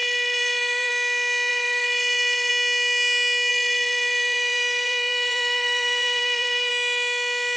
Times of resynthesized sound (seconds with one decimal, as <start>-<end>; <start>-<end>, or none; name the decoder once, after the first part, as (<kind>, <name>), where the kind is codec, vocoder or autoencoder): 0.0-0.9 (vocoder, BigVGAN v2); 1.5-2.5; 3.5-6.7